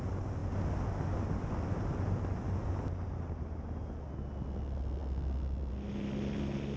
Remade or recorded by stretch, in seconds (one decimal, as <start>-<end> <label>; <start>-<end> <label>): 0.0-6.8 recorded